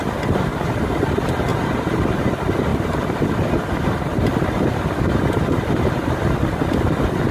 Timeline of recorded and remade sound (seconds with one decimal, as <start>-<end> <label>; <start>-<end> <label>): 0.0-1.5 recorded; 1.5-2.0 remade; 2.0-7.3 recorded